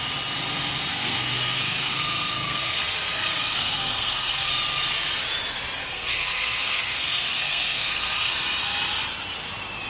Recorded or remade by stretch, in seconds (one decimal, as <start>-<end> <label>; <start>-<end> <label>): 0.0-0.9 recorded; 0.9-4.5 remade; 4.5-5.8 recorded; 5.8-8.3 remade; 8.3-9.9 recorded

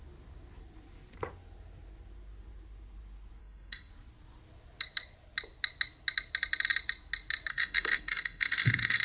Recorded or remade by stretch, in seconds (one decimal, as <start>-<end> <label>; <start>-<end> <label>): 0.0-3.4 recorded; 3.4-3.9 remade; 3.9-7.5 recorded; 7.5-9.0 remade

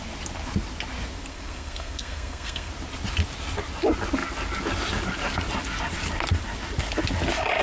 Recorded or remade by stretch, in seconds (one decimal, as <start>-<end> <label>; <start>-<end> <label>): 0.0-1.3 recorded; 1.3-2.7 remade; 2.7-7.6 recorded

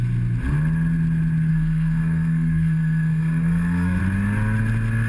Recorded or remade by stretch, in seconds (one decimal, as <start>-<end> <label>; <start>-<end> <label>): 0.0-1.5 recorded; 1.5-4.0 remade; 4.0-5.1 recorded

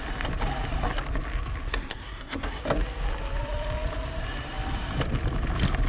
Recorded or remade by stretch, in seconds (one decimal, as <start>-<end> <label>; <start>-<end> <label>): 0.0-1.7 recorded; 1.7-2.6 remade; 2.6-5.9 recorded

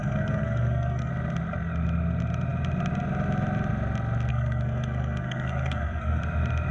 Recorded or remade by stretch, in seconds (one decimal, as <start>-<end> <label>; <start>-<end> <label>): 0.0-1.1 remade; 1.1-4.3 recorded; 4.3-6.2 remade; 6.2-6.7 recorded